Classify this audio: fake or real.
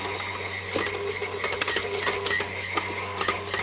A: real